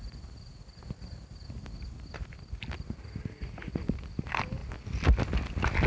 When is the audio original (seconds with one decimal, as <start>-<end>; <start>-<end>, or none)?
0.0-5.9